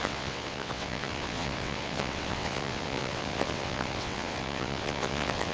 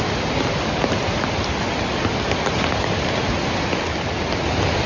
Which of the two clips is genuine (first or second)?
second